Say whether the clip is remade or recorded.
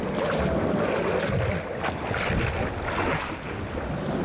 recorded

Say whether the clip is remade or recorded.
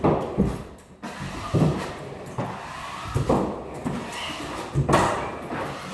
recorded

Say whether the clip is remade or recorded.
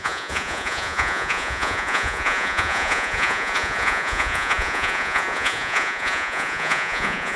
remade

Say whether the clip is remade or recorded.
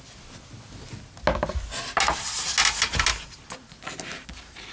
recorded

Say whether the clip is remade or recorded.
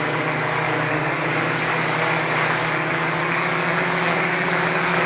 remade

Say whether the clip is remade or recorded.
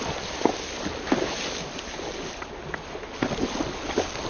recorded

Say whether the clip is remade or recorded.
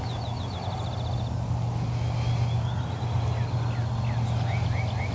recorded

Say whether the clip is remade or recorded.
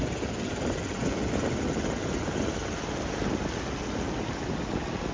recorded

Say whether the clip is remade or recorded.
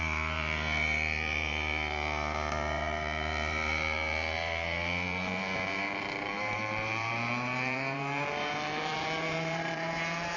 remade